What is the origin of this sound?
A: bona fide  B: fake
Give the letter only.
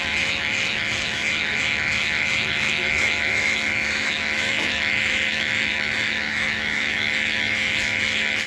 B